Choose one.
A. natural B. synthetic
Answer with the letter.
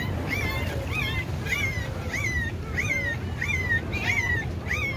A